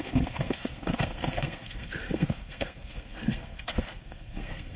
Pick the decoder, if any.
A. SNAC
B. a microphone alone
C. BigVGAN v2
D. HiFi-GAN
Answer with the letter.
A